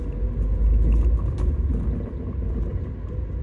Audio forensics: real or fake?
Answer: real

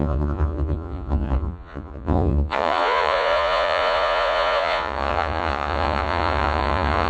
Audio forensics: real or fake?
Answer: fake